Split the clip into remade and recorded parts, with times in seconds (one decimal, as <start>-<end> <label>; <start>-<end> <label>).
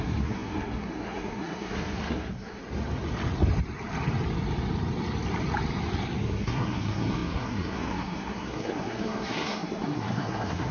0.0-2.6 remade; 2.6-6.2 recorded; 6.2-10.7 remade